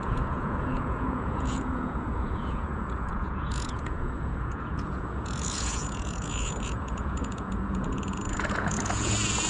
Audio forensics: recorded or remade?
remade